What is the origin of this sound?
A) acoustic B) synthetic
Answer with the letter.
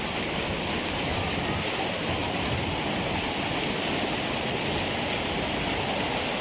A